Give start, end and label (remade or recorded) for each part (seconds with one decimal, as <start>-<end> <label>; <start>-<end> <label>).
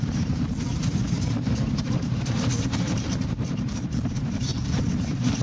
0.0-4.5 remade; 4.5-5.0 recorded; 5.0-5.4 remade